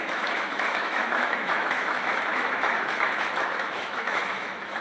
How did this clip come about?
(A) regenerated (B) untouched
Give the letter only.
A